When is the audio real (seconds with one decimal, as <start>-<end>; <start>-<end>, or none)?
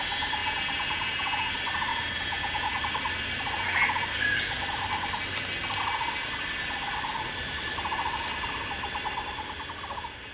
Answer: 0.0-0.4; 1.5-1.9; 2.8-10.3